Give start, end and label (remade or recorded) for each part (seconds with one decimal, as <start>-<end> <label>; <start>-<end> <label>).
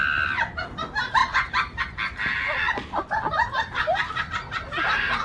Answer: 0.0-5.2 recorded